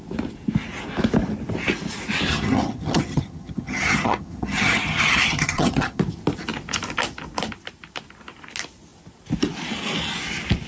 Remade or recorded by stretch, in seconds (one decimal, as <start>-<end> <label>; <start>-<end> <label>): 0.0-2.3 recorded; 2.3-6.0 remade; 6.0-10.7 recorded